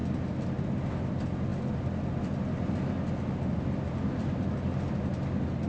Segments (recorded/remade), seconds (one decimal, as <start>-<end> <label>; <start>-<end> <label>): 0.0-5.7 recorded